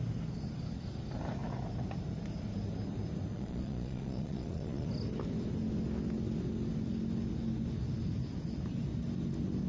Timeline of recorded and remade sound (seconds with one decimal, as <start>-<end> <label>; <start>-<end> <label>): 0.0-3.3 recorded; 3.3-4.9 remade; 4.9-9.7 recorded